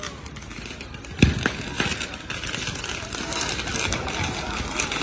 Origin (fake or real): real